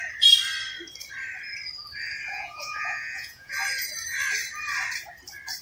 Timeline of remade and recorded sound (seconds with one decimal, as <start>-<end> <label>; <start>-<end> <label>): 0.0-2.3 recorded; 2.3-3.5 remade; 3.5-5.6 recorded